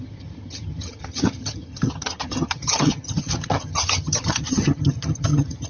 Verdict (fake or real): fake